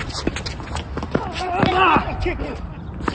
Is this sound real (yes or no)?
yes